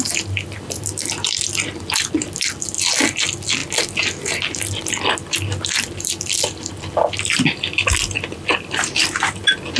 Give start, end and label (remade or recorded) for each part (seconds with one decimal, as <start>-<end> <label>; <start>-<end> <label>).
0.0-9.8 recorded